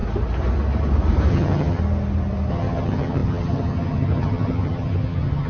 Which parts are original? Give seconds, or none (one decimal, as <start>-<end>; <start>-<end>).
0.0-1.3; 1.8-2.5

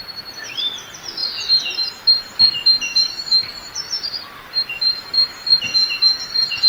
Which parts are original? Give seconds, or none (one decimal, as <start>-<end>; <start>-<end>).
0.0-2.9; 4.2-6.7

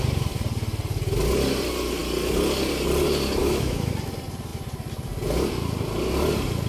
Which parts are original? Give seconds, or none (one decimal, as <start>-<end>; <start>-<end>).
0.0-3.4; 3.9-6.7

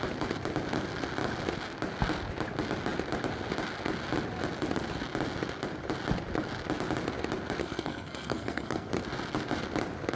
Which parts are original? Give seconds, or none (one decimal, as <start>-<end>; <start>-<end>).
0.0-7.6; 8.9-10.2